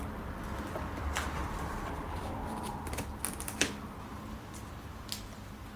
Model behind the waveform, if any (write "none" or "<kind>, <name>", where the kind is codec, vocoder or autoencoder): vocoder, BigVGAN v2